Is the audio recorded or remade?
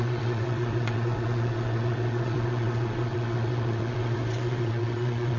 remade